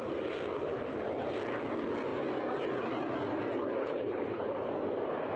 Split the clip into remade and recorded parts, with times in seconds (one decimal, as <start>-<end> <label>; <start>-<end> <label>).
0.0-3.8 recorded; 3.8-4.7 remade; 4.7-5.4 recorded